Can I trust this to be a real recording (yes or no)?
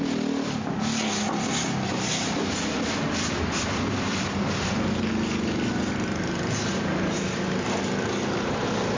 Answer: yes